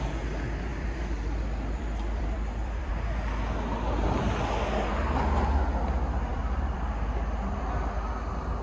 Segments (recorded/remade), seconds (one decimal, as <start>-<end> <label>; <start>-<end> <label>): 0.0-0.7 recorded; 0.7-2.9 remade; 2.9-6.3 recorded; 6.3-7.6 remade; 7.6-8.6 recorded